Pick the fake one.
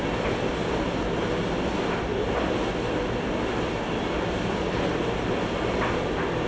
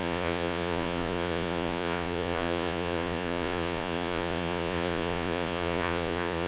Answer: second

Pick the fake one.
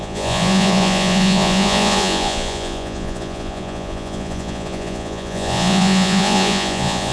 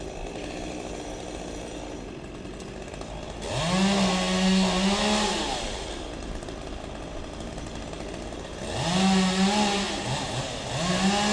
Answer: first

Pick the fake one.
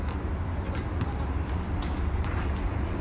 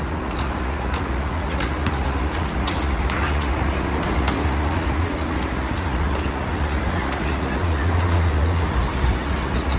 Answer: second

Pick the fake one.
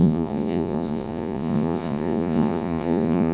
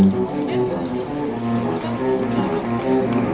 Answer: first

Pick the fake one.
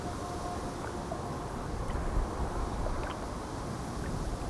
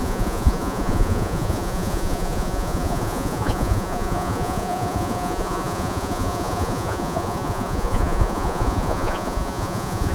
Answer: second